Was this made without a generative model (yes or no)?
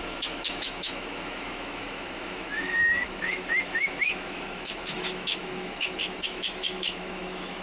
no